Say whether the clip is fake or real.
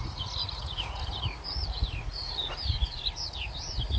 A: fake